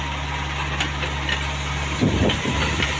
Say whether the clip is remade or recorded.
recorded